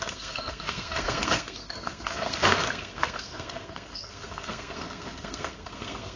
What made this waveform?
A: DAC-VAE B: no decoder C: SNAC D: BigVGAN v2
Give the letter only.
C